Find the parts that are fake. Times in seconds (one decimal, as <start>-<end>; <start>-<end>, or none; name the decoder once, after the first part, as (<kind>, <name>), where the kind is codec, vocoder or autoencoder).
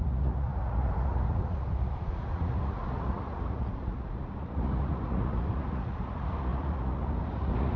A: 0.0-7.8 (vocoder, Vocos)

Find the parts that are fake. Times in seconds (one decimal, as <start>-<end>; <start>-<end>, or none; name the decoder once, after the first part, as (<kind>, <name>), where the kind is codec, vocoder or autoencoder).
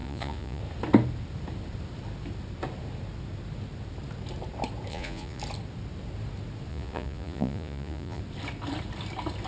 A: 0.0-0.6 (vocoder, Vocos); 4.9-5.4; 6.7-8.2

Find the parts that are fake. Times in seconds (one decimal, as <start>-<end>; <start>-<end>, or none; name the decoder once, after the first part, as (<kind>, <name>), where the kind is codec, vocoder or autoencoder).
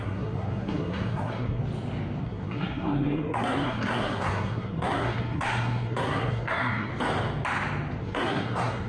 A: 0.0-1.6 (codec, SNAC); 2.2-6.9; 8.0-8.9